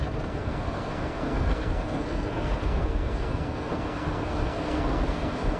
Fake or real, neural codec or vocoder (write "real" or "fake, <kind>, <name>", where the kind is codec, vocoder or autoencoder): fake, codec, SNAC